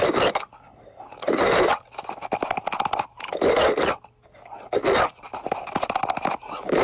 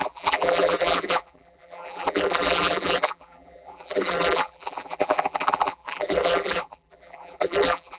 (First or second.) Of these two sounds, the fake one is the second